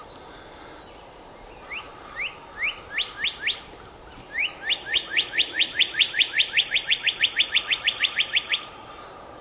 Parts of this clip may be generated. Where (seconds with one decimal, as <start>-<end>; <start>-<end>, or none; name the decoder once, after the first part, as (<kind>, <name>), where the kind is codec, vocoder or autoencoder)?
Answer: 4.9-8.8 (vocoder, Vocos)

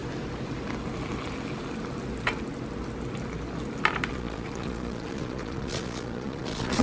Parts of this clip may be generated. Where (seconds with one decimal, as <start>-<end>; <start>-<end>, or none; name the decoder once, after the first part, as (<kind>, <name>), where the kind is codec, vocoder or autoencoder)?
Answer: 4.1-6.8 (vocoder, Vocos)

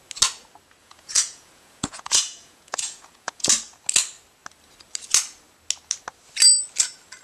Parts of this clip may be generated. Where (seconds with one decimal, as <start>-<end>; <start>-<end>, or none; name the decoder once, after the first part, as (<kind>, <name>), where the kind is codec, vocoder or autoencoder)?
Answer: 0.8-3.5 (vocoder, Vocos)

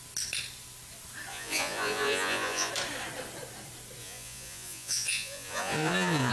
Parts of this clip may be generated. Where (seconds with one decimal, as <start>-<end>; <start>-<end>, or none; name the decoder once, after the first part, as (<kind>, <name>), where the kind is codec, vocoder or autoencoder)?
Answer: 1.3-2.7 (vocoder, Vocos); 4.0-6.3

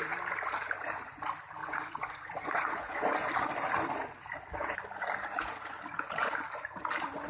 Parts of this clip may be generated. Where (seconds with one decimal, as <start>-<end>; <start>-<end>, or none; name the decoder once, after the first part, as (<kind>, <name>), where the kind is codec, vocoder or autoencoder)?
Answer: 1.6-3.3 (vocoder, Vocos)

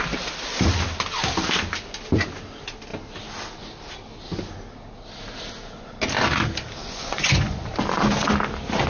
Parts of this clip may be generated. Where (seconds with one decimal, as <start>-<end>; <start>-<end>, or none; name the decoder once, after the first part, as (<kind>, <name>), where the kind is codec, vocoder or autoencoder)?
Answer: 6.8-7.6 (vocoder, Vocos)

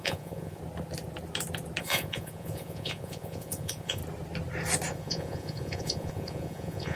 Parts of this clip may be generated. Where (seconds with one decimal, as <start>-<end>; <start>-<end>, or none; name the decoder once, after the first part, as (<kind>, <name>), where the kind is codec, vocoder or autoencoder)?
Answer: 0.0-0.6 (vocoder, Vocos); 1.8-4.0; 4.9-7.0

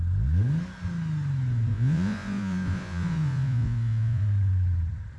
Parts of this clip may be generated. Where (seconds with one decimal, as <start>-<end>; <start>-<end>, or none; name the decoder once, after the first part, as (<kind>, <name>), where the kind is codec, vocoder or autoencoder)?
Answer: 1.7-4.2 (vocoder, Vocos)